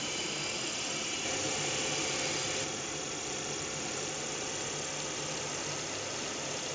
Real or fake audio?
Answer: real